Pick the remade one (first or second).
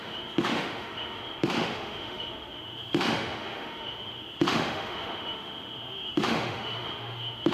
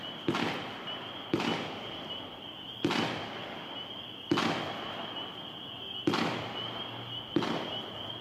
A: first